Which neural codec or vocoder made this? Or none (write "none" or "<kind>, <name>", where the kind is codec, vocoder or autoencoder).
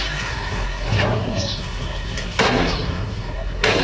codec, SNAC